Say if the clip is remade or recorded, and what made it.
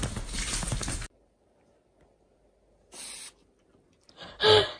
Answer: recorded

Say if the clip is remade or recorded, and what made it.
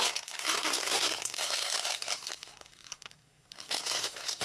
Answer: remade, codec, SNAC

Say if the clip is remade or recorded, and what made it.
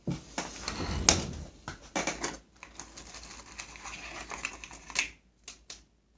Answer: recorded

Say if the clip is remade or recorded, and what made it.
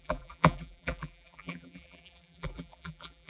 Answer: remade, vocoder, BigVGAN v2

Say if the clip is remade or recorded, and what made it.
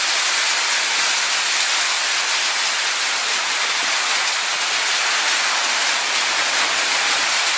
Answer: recorded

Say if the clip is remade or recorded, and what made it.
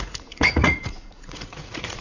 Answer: remade, vocoder, Vocos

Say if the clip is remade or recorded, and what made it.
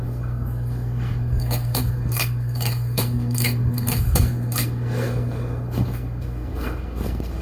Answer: remade, codec, SNAC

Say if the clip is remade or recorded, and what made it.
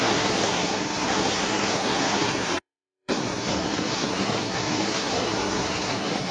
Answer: remade, codec, SNAC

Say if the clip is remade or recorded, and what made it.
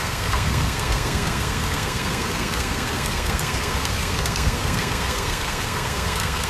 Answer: remade, codec, SNAC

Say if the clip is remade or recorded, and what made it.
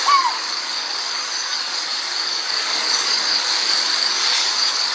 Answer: remade, codec, DAC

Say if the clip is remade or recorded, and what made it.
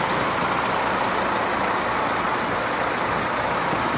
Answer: recorded